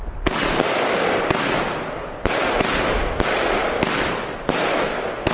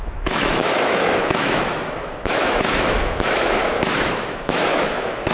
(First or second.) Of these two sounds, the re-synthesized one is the second